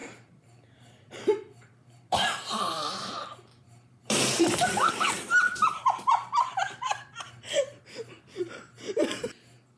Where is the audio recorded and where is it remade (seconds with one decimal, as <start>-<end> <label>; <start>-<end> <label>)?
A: 0.0-9.8 remade